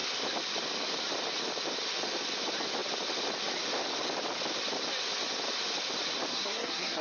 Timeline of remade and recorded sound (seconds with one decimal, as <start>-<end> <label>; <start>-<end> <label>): 0.0-6.3 recorded; 6.3-7.0 remade